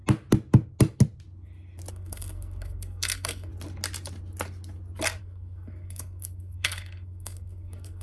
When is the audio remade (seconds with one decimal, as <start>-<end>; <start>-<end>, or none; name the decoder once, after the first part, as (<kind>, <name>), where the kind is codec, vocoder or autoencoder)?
1.9-3.5 (codec, SNAC); 5.2-8.0